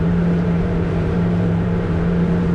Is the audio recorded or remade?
remade